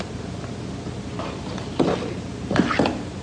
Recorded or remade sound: recorded